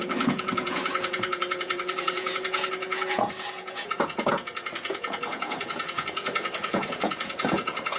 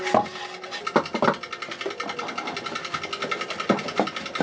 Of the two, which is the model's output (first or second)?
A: first